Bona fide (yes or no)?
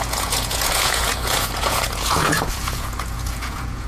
no